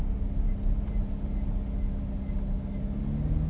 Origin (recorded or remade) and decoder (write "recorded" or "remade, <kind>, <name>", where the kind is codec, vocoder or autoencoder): recorded